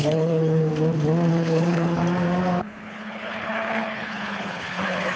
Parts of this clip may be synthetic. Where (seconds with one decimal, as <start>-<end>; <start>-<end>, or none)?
0.0-0.7; 1.3-2.0; 2.6-5.2